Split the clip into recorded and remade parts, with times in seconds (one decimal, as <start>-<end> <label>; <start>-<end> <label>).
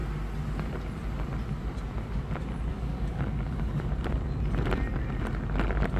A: 0.0-2.7 recorded; 2.7-3.9 remade; 3.9-6.0 recorded